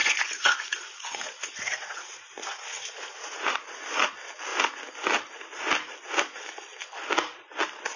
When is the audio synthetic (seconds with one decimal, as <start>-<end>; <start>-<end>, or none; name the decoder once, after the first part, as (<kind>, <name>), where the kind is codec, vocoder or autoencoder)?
0.0-3.8 (vocoder, Vocos)